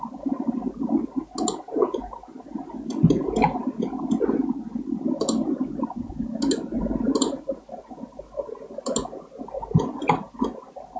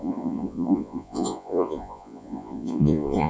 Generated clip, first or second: second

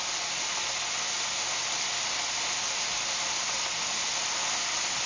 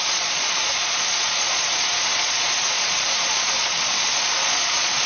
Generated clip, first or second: second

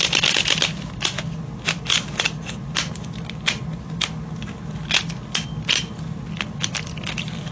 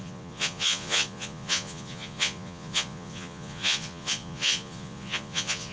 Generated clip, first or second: second